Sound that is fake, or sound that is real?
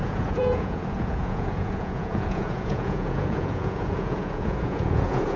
fake